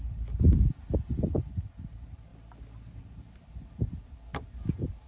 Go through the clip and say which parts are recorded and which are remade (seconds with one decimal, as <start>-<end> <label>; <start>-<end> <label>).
0.0-5.1 recorded